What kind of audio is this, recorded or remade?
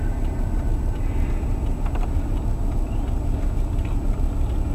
recorded